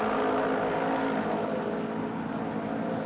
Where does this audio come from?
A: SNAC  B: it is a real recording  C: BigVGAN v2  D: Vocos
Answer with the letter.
B